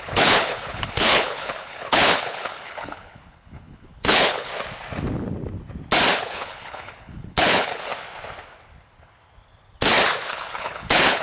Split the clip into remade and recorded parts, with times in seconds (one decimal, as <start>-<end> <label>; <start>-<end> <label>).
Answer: 0.0-4.5 remade; 4.5-6.2 recorded; 6.2-7.9 remade; 7.9-10.3 recorded; 10.3-11.2 remade